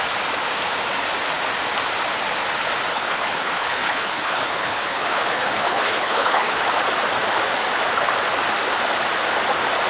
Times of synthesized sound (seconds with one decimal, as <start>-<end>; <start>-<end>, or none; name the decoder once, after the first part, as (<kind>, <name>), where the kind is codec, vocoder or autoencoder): 2.9-6.6 (codec, HILCodec)